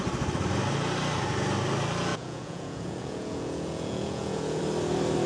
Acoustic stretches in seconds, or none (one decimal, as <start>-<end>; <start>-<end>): 0.0-2.1; 4.6-5.3